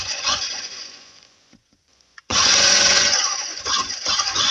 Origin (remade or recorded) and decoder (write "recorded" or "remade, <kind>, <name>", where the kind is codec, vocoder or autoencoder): remade, vocoder, Vocos